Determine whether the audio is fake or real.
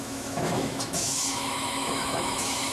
fake